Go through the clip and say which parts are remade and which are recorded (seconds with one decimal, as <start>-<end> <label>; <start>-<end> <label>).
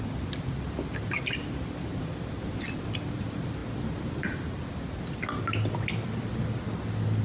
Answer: 0.0-7.2 recorded